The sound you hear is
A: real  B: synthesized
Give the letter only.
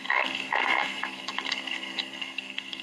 B